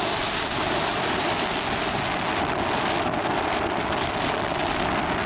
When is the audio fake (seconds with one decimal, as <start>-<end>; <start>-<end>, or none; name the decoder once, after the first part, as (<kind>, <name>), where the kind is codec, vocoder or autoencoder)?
none